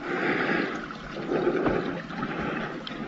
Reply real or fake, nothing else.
real